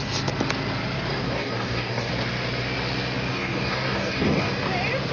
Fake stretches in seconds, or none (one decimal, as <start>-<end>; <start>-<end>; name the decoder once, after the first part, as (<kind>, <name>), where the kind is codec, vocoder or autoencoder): 1.1-2.1 (codec, DAC); 3.3-4.5